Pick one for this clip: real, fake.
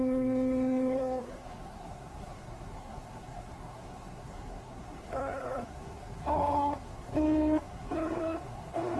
fake